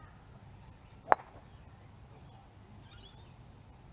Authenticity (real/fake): real